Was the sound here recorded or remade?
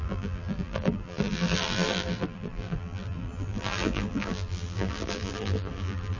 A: remade